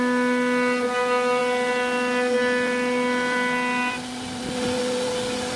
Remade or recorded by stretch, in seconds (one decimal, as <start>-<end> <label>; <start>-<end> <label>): 0.0-5.6 recorded